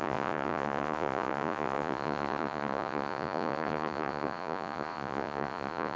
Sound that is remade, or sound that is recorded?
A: remade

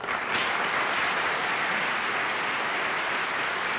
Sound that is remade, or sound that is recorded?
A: recorded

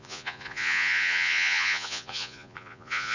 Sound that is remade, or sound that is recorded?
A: remade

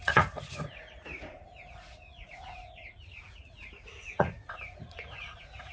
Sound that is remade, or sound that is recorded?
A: remade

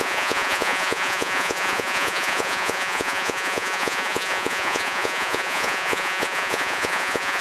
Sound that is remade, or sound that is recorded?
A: remade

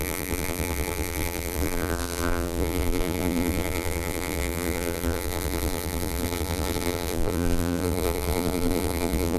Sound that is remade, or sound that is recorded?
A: remade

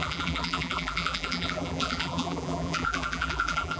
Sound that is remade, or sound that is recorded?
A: remade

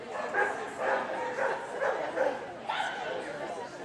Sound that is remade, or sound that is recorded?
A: recorded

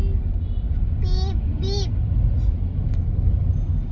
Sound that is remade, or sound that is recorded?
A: recorded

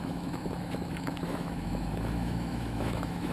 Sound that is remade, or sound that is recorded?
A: remade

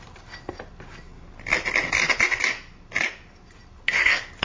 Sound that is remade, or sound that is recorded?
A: recorded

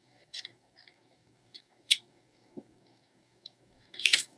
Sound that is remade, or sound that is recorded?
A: remade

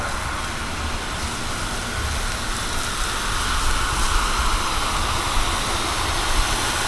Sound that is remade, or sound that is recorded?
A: recorded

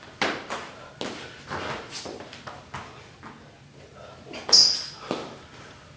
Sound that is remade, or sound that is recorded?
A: recorded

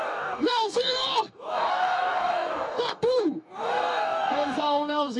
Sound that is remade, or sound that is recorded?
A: remade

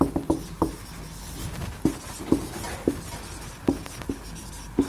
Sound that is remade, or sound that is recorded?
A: recorded